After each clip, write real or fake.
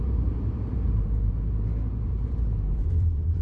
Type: fake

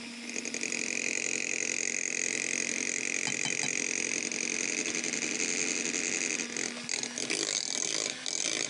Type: real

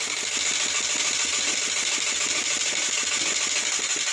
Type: fake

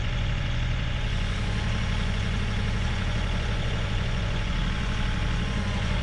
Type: fake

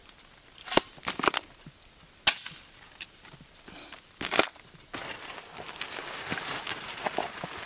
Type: real